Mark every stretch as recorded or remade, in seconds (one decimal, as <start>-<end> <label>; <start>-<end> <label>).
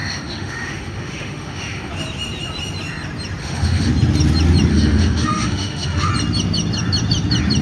0.0-1.9 remade; 1.9-3.4 recorded; 3.4-3.9 remade; 3.9-4.7 recorded; 4.7-6.1 remade; 6.1-7.6 recorded